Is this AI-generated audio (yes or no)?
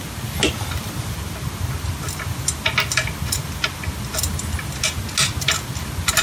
no